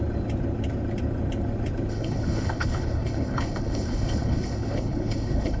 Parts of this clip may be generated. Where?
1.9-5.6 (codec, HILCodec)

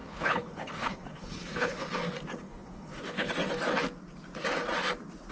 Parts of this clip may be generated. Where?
0.0-1.8 (codec, HILCodec); 2.4-3.3

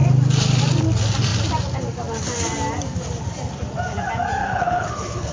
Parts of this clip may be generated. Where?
4.4-5.3 (codec, HILCodec)

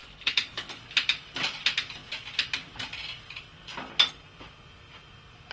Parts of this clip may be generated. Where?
0.0-0.8 (codec, HILCodec)

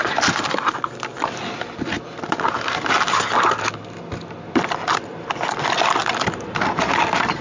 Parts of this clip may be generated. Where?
none

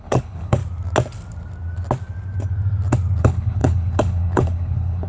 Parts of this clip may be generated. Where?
0.0-0.6 (codec, HILCodec); 3.2-5.1

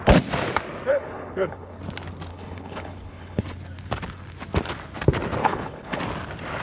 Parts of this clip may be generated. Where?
0.9-1.8 (codec, HILCodec); 2.3-3.4; 5.4-6.0

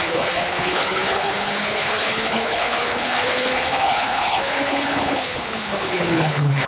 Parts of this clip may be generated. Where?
0.0-6.7 (codec, HILCodec)